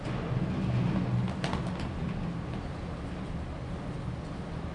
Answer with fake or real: real